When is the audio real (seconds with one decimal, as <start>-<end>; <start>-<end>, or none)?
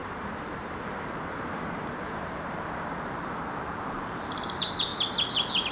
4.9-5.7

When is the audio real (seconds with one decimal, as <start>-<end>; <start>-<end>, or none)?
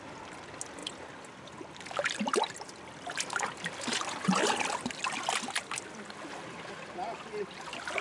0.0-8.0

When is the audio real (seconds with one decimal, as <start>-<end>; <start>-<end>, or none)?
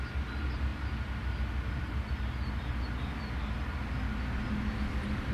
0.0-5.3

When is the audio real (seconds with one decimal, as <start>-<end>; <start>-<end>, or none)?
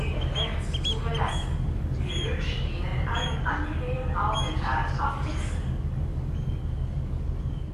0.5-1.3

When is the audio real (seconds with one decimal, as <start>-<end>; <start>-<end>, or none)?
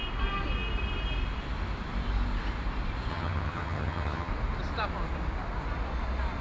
0.0-3.1; 4.3-6.4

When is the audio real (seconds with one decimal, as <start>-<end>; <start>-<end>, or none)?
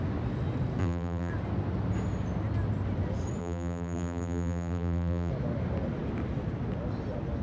0.0-0.8; 1.3-3.4; 5.3-7.4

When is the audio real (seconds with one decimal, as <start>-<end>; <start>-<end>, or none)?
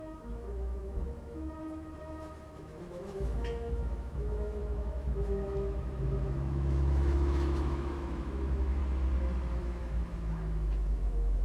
8.8-9.5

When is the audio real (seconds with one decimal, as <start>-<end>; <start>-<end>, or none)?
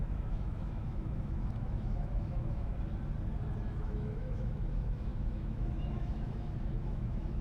2.7-3.7